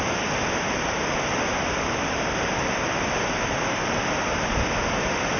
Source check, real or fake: real